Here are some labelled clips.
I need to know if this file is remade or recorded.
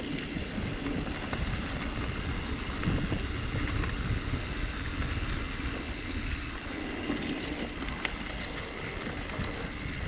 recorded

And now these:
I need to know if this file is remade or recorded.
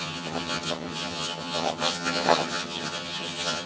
remade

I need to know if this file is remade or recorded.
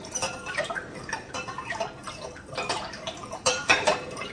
remade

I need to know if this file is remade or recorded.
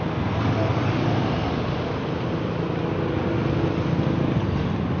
recorded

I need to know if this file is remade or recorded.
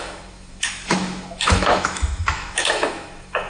remade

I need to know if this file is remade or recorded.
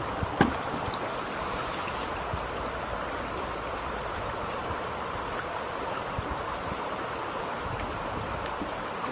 remade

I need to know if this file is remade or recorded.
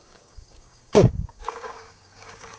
remade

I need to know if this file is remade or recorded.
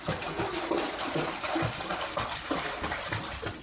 recorded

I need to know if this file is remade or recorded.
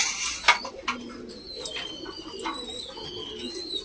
recorded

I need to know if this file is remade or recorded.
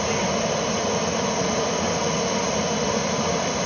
recorded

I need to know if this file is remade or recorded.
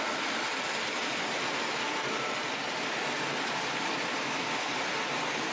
recorded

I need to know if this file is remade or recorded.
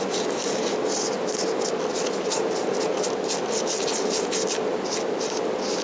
recorded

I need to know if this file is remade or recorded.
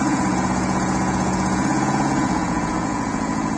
remade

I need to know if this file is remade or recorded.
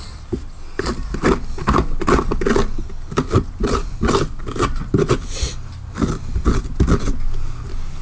recorded